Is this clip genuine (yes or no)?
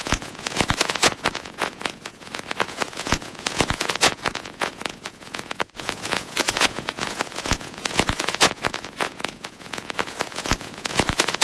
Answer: no